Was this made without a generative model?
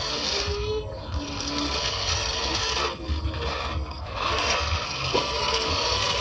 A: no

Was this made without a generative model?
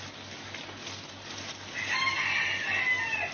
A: yes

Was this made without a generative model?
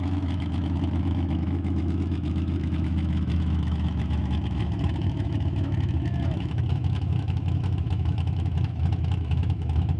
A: no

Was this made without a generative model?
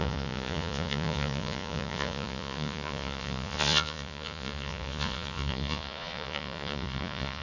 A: no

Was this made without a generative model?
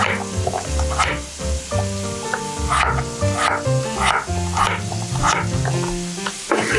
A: yes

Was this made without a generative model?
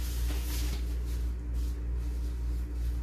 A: yes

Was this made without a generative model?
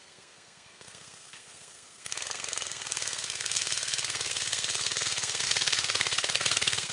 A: no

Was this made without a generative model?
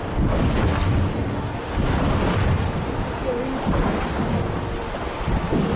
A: yes